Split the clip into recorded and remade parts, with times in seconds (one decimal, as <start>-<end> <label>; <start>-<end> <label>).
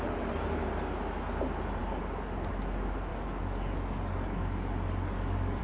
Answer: 0.0-3.1 recorded; 3.1-5.6 remade